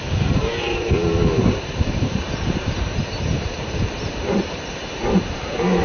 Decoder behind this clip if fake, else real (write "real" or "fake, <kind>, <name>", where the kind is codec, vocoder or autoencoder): fake, vocoder, BigVGAN v2